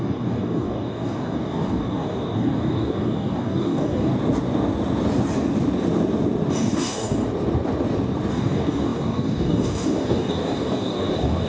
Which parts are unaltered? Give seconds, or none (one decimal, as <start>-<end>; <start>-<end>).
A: 4.1-6.5; 7.2-8.3